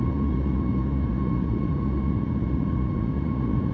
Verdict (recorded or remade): remade